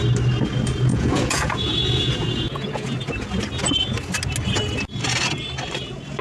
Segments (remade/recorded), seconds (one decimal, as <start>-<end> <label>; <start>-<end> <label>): 0.0-0.9 recorded; 0.9-2.9 remade; 2.9-6.2 recorded